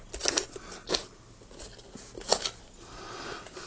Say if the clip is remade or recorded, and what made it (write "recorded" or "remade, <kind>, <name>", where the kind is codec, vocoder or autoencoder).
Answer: recorded